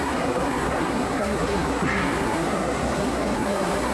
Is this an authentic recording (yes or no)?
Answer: no